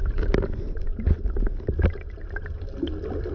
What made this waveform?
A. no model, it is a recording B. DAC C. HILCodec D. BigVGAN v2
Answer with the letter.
A